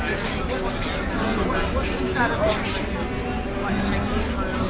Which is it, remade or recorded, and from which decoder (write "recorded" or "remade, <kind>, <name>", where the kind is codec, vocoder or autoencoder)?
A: recorded